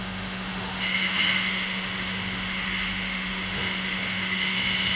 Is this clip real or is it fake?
fake